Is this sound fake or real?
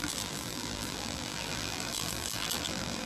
fake